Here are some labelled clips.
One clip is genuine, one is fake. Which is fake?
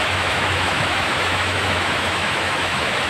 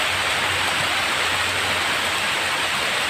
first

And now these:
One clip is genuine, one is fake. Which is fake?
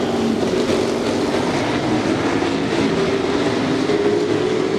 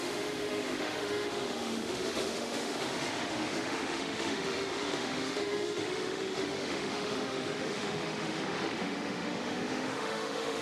second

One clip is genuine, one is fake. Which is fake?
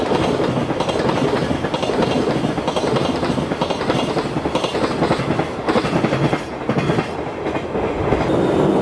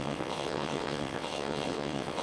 second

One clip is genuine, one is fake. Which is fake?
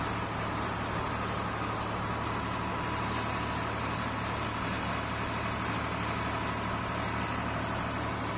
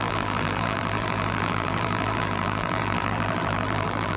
second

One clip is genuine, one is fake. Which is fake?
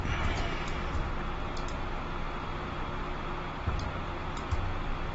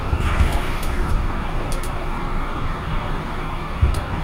second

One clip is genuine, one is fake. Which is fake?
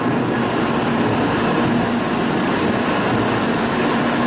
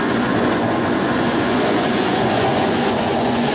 second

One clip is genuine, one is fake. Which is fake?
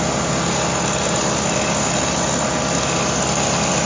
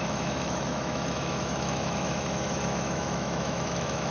second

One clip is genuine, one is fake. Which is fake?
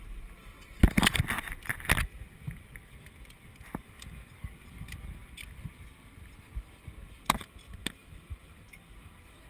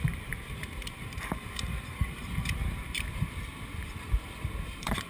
second